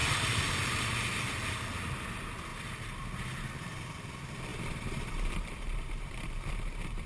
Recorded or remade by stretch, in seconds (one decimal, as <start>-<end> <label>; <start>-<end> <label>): 0.0-1.3 remade; 1.3-4.5 recorded; 4.5-7.1 remade